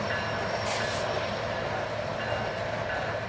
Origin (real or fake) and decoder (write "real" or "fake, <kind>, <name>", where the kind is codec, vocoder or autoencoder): real